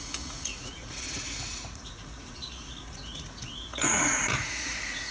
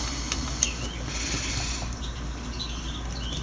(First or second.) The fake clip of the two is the first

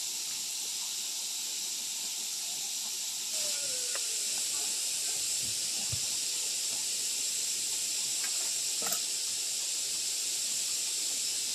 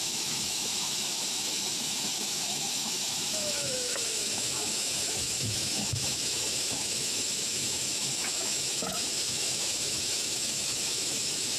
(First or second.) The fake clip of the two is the second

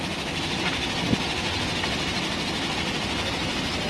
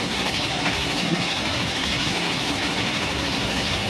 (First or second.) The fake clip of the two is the second